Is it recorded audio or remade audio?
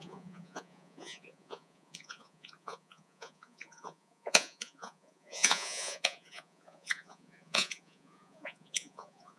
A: remade